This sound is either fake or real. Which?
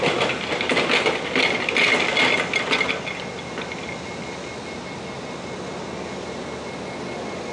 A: real